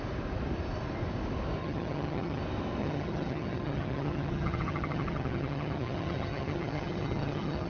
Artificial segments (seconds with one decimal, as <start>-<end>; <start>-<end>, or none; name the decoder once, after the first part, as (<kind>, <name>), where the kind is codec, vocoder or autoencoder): 1.6-2.4 (vocoder, HiFi-GAN); 2.8-7.7